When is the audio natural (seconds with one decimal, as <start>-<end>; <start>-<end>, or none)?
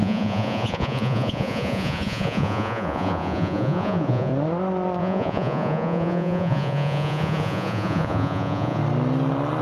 4.3-5.0; 8.8-9.6